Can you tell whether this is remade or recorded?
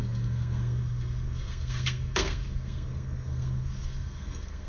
remade